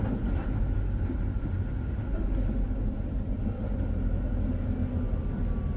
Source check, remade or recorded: recorded